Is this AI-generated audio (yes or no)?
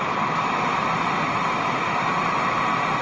no